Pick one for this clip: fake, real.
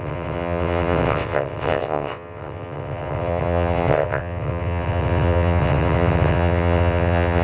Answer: fake